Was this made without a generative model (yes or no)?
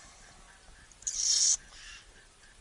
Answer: yes